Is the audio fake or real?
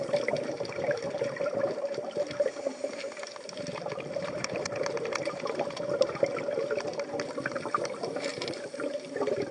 fake